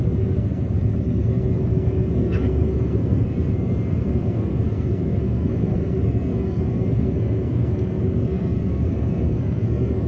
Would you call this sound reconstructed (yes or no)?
yes